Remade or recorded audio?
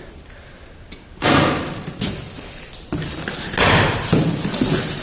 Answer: recorded